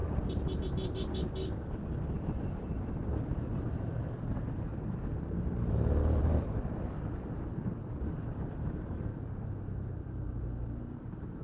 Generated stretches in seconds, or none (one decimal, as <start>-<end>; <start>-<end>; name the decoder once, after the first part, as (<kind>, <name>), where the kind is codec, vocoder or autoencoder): 1.2-6.2 (vocoder, BigVGAN v2); 7.8-11.4